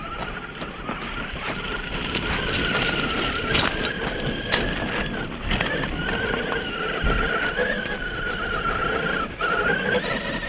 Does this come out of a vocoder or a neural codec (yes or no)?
no